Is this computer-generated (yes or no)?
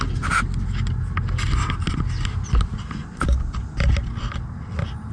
no